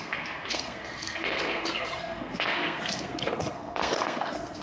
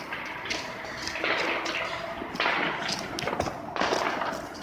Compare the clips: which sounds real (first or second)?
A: second